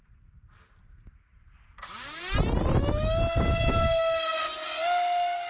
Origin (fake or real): real